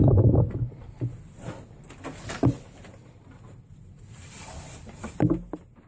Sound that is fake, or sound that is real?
real